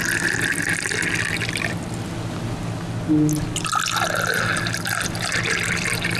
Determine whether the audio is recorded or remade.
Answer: recorded